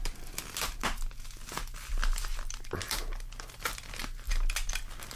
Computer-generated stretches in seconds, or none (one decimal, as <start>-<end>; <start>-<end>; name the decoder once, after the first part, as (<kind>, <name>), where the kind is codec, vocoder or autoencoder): none